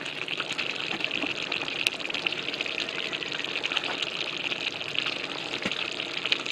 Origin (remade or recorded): recorded